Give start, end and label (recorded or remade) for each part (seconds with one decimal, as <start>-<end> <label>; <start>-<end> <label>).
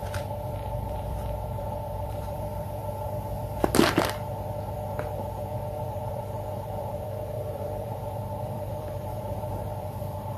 0.0-2.8 remade; 2.8-5.8 recorded; 5.8-10.4 remade